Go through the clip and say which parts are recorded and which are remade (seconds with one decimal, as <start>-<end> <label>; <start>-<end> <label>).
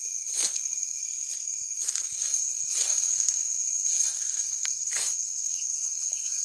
0.0-1.0 remade; 1.0-1.8 recorded; 1.8-6.4 remade